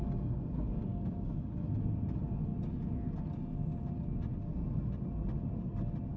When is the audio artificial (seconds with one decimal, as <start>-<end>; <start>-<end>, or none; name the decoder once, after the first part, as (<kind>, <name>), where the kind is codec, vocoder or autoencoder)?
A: 0.9-1.5 (codec, DAC)